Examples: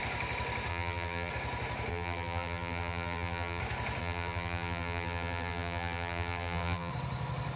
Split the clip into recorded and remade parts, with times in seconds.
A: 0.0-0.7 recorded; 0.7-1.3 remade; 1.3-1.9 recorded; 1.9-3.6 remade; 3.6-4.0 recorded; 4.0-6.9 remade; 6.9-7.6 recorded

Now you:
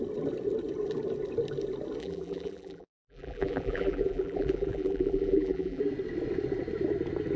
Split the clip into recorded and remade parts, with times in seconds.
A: 0.0-2.0 recorded; 2.0-5.8 remade; 5.8-7.4 recorded

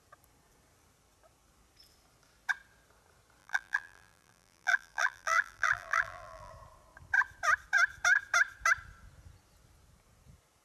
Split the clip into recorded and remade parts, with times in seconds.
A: 0.0-3.4 recorded; 3.4-6.5 remade; 6.5-10.6 recorded